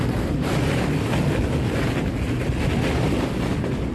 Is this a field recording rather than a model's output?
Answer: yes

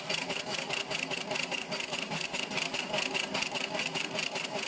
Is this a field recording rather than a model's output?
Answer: yes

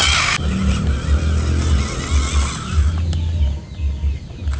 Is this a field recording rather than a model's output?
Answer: yes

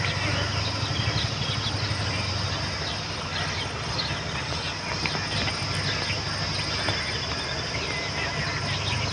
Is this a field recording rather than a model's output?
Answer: yes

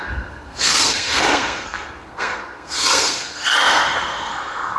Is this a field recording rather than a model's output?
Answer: no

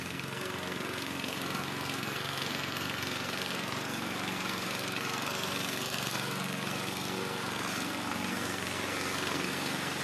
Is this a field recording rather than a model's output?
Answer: no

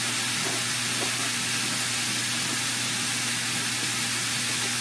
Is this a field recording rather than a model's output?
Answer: yes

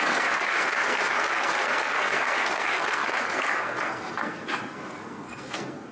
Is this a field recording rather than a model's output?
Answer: no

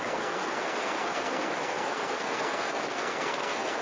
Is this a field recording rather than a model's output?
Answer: no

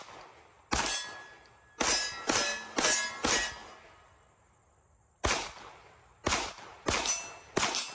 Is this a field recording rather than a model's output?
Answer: yes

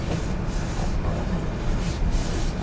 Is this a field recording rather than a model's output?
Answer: yes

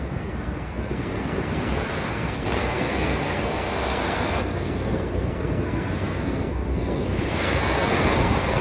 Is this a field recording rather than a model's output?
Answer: no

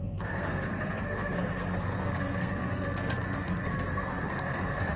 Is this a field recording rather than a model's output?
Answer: no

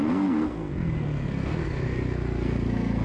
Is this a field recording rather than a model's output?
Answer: no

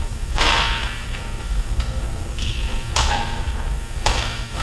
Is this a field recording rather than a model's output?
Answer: no